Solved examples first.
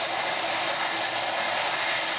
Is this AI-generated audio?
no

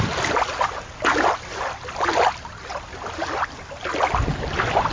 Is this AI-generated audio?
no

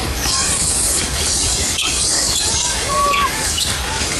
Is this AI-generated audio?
yes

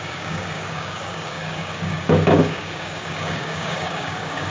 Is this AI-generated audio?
yes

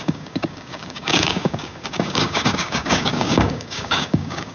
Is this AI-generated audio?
yes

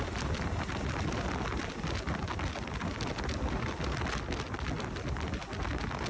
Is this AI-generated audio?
no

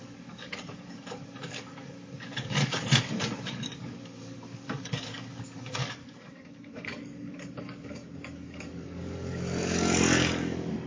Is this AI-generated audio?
yes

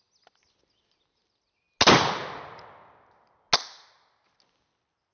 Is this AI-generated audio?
no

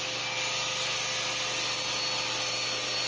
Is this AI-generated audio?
no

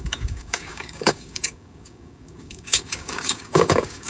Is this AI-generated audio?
yes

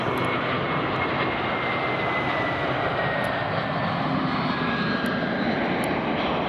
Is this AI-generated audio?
no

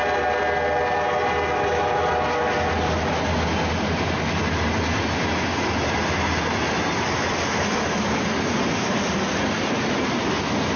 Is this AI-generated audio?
no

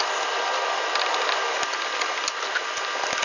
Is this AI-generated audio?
no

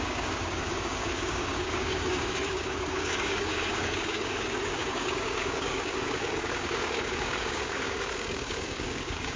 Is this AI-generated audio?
yes